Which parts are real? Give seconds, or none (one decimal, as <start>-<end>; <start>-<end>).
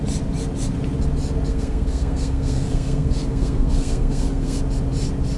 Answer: 0.0-1.5; 4.6-5.4